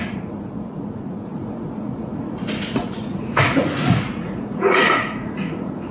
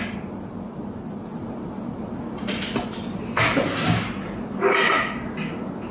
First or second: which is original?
second